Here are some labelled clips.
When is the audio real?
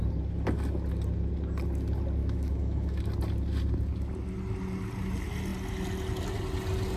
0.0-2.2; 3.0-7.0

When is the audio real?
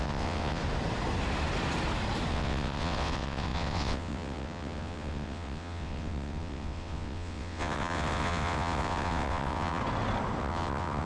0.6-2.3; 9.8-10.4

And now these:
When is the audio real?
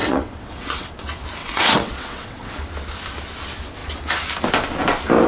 0.9-1.4; 2.5-5.3